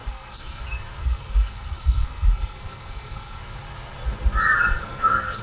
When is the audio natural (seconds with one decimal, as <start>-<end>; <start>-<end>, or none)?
0.6-1.0; 3.4-4.8